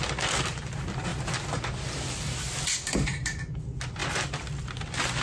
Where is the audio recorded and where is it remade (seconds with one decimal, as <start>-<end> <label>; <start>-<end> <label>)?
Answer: 0.0-5.2 recorded